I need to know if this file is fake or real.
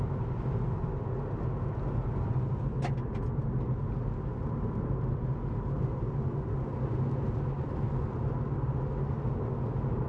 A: real